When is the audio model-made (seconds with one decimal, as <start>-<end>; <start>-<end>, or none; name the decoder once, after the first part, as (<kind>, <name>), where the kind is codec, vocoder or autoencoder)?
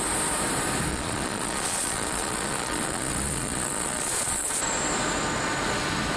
0.9-4.6 (vocoder, Vocos)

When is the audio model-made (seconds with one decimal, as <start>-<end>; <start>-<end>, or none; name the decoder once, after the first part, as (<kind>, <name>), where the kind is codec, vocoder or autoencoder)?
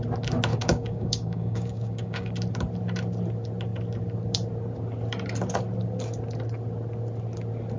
0.5-2.3 (codec, DAC)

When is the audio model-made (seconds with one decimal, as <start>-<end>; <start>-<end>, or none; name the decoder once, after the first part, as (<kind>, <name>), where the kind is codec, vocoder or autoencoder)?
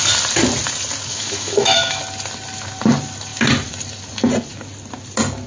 1.1-2.0 (autoencoder, DAC-VAE)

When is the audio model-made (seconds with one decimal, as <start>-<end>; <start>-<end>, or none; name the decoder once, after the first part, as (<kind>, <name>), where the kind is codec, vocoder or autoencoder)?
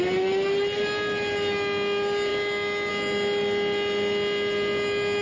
none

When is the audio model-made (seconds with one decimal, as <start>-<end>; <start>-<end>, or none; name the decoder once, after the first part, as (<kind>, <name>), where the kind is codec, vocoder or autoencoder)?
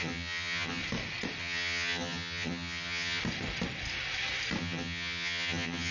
0.0-0.8 (vocoder, HiFi-GAN); 1.4-3.2; 4.6-5.9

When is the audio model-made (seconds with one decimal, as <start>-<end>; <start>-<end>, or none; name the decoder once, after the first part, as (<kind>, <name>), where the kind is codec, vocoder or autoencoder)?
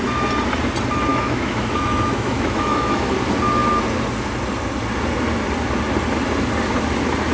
1.1-3.1 (autoencoder, DAC-VAE)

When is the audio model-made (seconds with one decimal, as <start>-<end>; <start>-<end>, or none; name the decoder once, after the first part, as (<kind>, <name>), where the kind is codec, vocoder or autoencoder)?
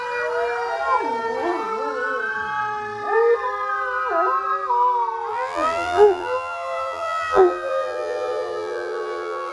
5.3-9.5 (vocoder, BigVGAN v2)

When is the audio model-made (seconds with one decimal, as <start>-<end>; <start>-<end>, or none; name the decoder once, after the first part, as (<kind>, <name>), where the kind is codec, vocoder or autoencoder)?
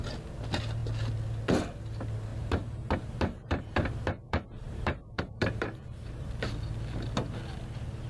2.3-6.3 (vocoder, BigVGAN v2)